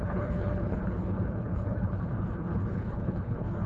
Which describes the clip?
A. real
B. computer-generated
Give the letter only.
B